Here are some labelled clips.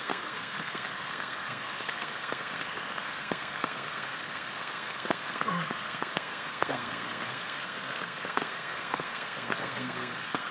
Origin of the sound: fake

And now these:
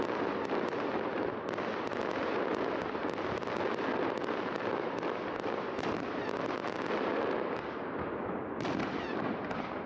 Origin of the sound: real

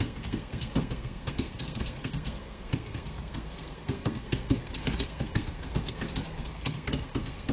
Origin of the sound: fake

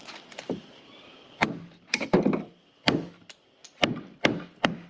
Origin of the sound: fake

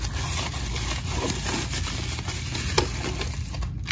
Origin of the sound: real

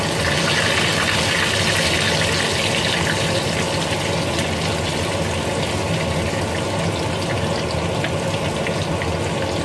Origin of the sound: real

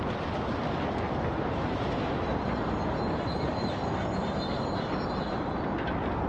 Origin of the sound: real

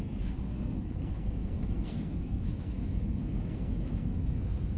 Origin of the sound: fake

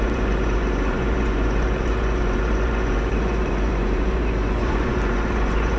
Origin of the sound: fake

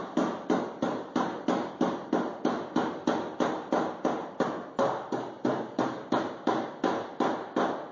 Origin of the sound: real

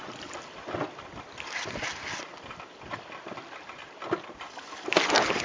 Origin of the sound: real